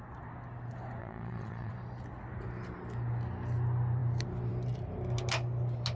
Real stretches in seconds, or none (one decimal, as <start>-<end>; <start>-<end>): 0.0-1.0; 1.7-6.0